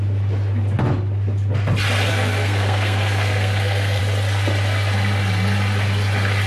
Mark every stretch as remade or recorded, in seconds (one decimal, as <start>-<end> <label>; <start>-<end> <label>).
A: 0.0-2.1 recorded; 2.1-4.0 remade; 4.0-6.5 recorded